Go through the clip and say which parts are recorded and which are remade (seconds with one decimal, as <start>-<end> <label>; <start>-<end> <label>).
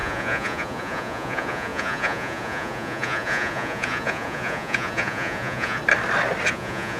0.0-5.8 remade; 5.8-6.5 recorded; 6.5-7.0 remade